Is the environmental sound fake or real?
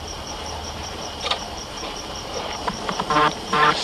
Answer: fake